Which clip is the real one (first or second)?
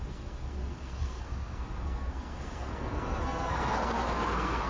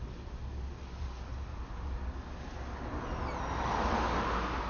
second